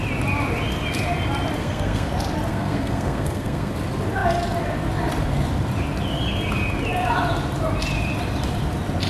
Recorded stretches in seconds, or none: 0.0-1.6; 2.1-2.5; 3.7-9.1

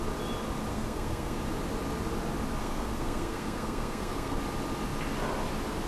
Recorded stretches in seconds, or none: 0.0-0.7; 1.4-2.6; 4.4-5.9

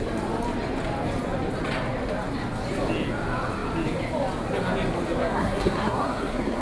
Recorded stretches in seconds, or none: 0.0-5.2

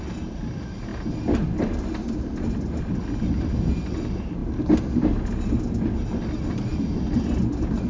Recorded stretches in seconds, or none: 0.0-2.0; 3.3-6.7; 7.3-7.9

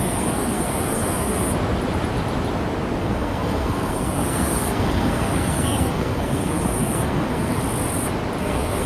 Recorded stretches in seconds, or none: 1.4-3.0; 7.6-8.4